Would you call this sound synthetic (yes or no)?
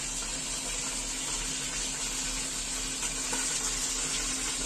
no